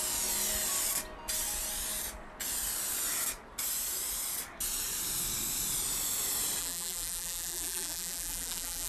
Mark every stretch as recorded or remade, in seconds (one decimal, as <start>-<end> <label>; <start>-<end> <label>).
0.0-6.6 recorded; 6.6-8.9 remade